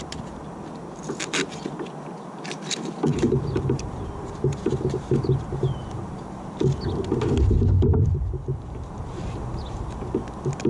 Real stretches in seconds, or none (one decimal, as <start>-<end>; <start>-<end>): 0.0-3.1; 6.7-7.8; 10.2-10.7